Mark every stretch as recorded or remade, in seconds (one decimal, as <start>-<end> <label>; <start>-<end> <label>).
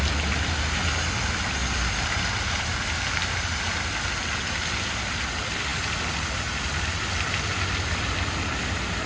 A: 0.0-9.1 recorded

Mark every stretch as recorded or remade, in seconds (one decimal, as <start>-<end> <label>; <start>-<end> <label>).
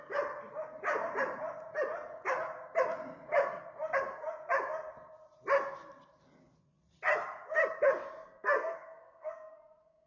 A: 0.0-8.2 recorded; 8.2-10.1 remade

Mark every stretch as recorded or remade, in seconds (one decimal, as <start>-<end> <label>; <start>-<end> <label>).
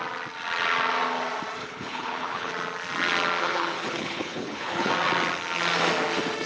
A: 0.0-1.6 recorded; 1.6-2.5 remade; 2.5-3.4 recorded; 3.4-4.9 remade; 4.9-6.5 recorded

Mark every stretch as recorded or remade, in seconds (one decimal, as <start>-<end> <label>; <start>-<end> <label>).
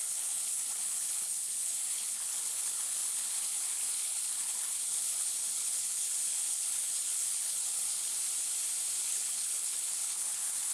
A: 0.0-8.1 remade; 8.1-9.0 recorded; 9.0-10.7 remade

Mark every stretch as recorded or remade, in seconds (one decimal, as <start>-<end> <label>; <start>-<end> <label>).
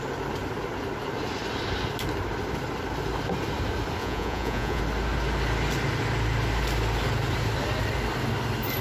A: 0.0-4.0 recorded; 4.0-4.8 remade; 4.8-8.8 recorded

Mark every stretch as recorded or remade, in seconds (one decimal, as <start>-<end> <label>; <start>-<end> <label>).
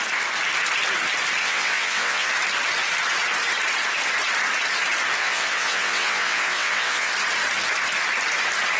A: 0.0-1.4 recorded; 1.4-2.3 remade; 2.3-5.2 recorded; 5.2-7.1 remade; 7.1-8.8 recorded